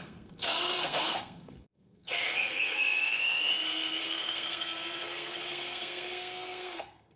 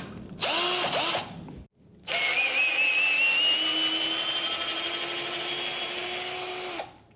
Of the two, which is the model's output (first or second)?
first